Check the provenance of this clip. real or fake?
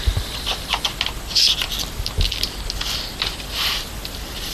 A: real